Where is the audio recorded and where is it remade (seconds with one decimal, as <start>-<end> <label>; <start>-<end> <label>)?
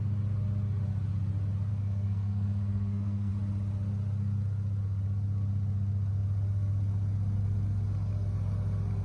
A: 0.0-1.7 recorded; 1.7-3.3 remade; 3.3-9.0 recorded